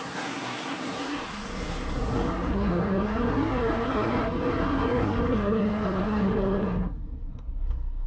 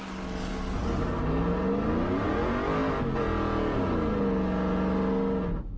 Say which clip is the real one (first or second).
second